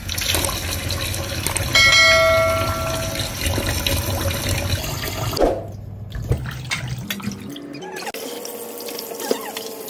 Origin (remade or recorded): recorded